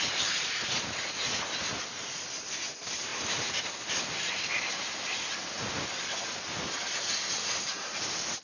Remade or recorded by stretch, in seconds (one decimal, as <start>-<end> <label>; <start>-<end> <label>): 0.0-8.4 recorded